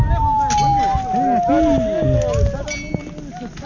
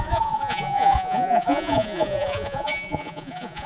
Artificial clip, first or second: second